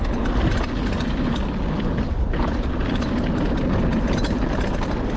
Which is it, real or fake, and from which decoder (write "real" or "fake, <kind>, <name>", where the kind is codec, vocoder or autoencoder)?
real